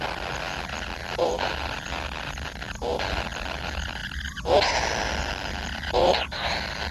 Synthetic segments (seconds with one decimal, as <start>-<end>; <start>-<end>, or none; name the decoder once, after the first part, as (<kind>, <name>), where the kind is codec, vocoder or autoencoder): none